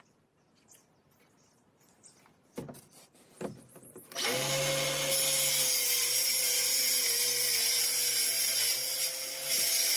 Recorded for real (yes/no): yes